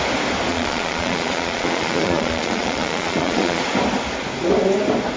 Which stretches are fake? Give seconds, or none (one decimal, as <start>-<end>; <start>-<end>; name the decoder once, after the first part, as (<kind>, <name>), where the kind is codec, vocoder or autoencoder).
0.5-3.6 (vocoder, Vocos)